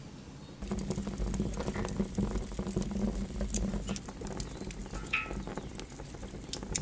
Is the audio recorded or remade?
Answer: recorded